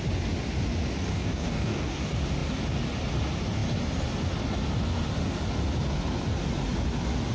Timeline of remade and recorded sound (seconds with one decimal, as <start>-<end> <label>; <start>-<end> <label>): 0.0-1.1 recorded; 1.1-2.0 remade; 2.0-7.3 recorded